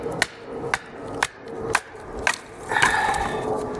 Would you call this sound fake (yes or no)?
no